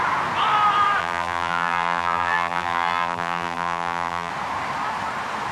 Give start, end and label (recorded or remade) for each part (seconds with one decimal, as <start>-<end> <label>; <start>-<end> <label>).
0.0-1.0 recorded; 1.0-4.3 remade; 4.3-5.5 recorded